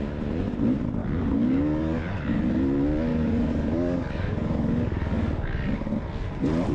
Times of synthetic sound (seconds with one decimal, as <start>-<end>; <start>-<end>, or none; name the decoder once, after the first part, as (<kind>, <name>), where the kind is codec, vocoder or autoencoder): 1.0-2.4 (codec, DAC); 3.1-5.9